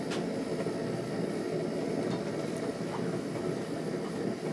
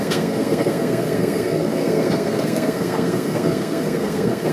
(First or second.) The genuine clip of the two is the first